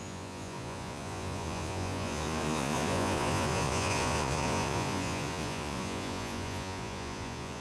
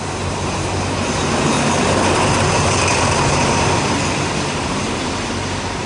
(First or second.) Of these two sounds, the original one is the second